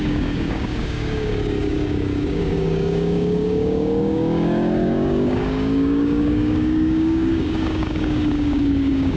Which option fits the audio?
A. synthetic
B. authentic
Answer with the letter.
A